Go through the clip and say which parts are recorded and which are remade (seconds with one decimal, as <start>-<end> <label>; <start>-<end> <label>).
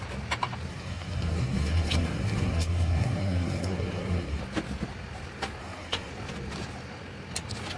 0.0-0.7 recorded; 0.7-4.4 remade; 4.4-5.6 recorded; 5.6-6.1 remade; 6.1-7.8 recorded